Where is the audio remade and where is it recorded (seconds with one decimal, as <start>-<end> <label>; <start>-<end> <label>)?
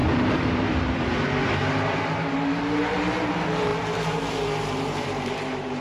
0.0-5.8 remade